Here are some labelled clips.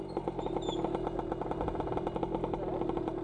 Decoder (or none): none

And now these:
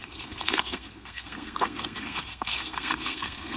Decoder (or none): codec, SNAC